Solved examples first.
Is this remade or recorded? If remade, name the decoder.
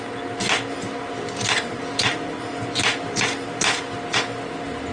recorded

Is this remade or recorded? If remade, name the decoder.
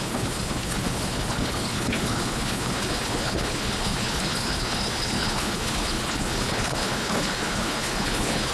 remade, codec, HILCodec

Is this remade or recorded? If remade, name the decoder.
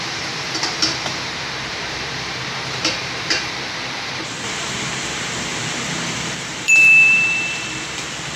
remade, vocoder, BigVGAN v2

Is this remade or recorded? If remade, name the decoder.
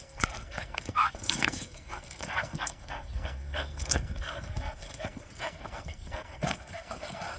remade, codec, SNAC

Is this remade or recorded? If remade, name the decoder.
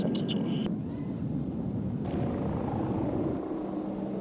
recorded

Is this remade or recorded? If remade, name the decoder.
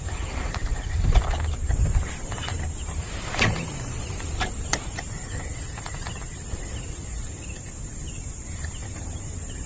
remade, vocoder, BigVGAN v2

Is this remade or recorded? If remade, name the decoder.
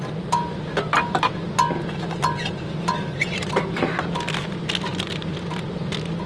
recorded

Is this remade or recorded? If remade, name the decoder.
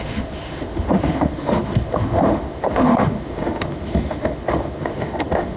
remade, autoencoder, DAC-VAE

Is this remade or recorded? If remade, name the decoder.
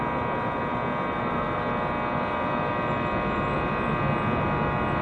recorded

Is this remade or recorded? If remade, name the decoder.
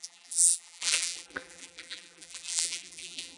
remade, vocoder, BigVGAN v2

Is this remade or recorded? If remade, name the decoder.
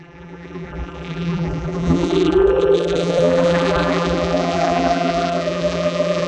remade, vocoder, BigVGAN v2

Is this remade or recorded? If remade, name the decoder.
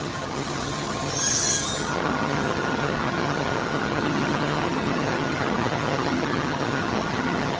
remade, vocoder, HiFi-GAN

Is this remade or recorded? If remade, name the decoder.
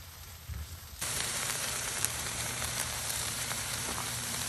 remade, vocoder, BigVGAN v2